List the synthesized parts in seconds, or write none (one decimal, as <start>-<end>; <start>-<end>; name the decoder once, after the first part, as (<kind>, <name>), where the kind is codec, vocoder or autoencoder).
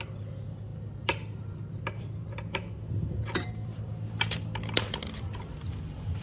0.0-3.9 (vocoder, BigVGAN v2)